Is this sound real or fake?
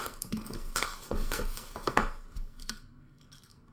fake